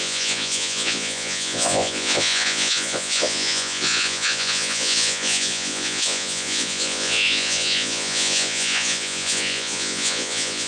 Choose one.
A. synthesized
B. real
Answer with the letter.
A